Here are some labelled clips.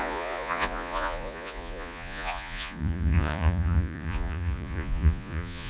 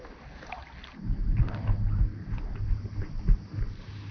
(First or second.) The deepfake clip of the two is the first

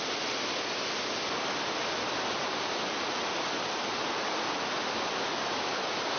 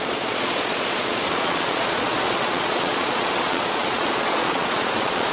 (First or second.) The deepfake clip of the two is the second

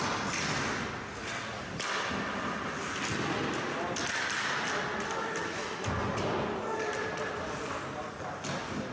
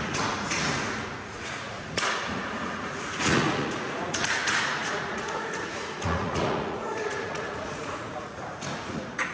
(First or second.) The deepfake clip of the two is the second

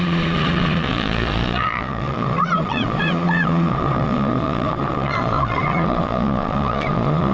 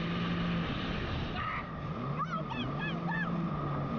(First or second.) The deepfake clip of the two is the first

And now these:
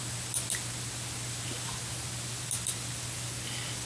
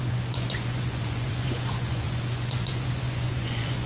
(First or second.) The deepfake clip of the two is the second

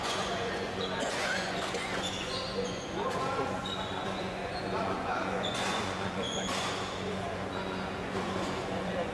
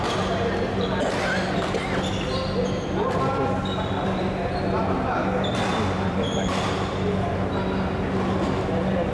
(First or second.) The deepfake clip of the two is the first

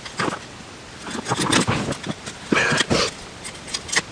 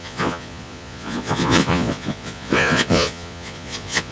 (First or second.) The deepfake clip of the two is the second